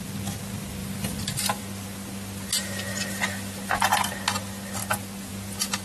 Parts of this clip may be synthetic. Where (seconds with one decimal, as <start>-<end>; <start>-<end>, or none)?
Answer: 0.8-1.6; 2.9-4.1